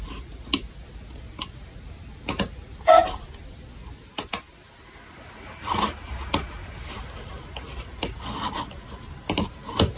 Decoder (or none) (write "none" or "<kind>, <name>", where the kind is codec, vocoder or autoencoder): none